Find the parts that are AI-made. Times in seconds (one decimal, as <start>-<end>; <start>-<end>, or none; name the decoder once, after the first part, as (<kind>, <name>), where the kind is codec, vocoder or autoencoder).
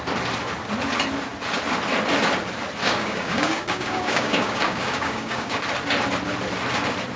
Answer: 2.8-5.6 (codec, DAC)